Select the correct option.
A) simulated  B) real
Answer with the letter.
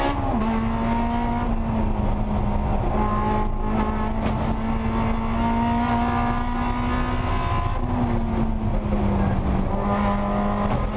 B